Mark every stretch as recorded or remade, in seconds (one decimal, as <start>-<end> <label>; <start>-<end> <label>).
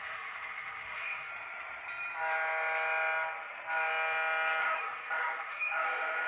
0.0-1.3 remade; 1.3-4.6 recorded; 4.6-6.3 remade